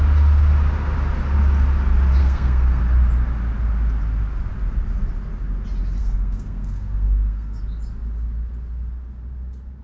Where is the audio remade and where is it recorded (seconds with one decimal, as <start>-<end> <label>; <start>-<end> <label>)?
0.0-2.2 recorded; 2.2-2.8 remade; 2.8-6.0 recorded; 6.0-7.6 remade; 7.6-9.8 recorded